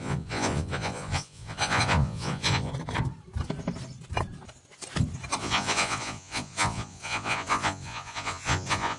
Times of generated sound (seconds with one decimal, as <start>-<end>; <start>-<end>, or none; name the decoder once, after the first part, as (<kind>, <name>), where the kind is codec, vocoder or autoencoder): 0.0-2.7 (vocoder, Vocos); 5.4-9.0